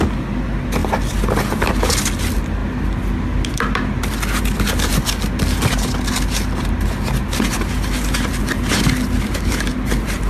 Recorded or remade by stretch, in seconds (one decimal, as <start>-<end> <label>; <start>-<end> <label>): 0.0-10.3 recorded